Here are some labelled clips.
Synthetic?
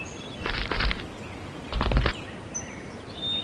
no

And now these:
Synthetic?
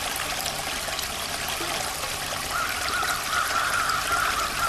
no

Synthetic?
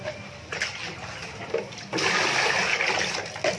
no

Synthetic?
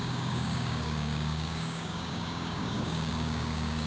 yes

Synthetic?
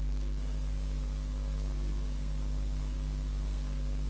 yes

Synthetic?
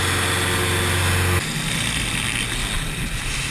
no